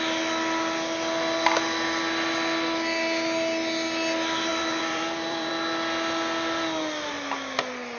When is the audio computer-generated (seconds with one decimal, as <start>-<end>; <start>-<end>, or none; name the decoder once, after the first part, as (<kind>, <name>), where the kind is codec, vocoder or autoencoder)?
4.5-5.5 (vocoder, BigVGAN v2)